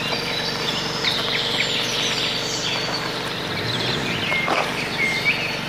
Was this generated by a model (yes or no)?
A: yes